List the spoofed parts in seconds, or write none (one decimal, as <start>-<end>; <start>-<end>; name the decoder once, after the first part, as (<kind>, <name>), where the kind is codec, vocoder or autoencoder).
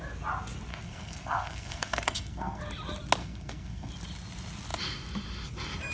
0.7-2.6 (codec, SNAC); 3.2-3.9